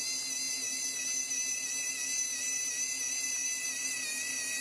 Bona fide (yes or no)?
yes